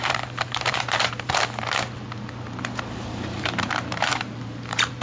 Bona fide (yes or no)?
no